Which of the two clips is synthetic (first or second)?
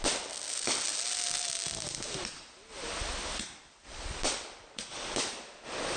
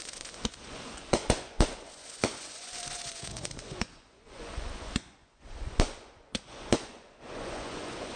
second